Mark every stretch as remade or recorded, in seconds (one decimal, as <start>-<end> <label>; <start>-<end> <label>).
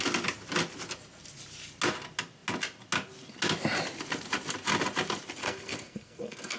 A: 0.0-5.4 recorded; 5.4-6.6 remade